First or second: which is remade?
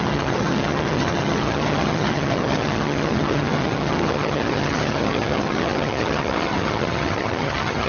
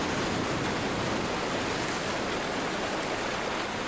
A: first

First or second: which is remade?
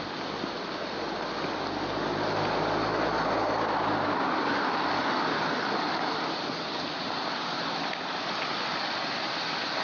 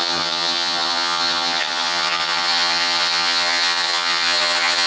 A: second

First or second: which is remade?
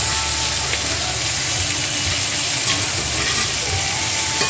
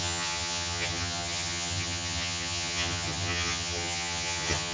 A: second